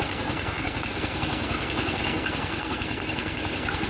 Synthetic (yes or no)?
yes